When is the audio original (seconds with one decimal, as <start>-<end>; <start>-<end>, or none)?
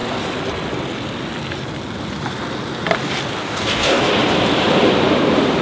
0.0-3.4; 4.0-5.6